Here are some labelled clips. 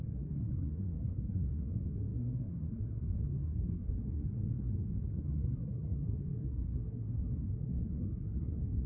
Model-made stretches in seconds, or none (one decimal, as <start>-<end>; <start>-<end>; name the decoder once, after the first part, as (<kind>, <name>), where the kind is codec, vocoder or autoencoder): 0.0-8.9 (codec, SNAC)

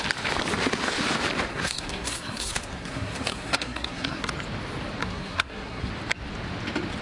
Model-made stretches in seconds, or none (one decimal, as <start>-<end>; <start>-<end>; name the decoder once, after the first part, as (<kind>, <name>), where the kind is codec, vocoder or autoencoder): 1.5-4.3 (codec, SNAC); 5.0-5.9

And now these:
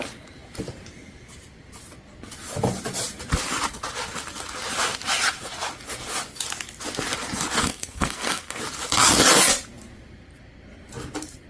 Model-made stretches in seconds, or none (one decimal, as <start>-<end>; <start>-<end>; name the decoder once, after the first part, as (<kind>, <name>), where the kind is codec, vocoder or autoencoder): 7.6-8.6 (codec, SNAC)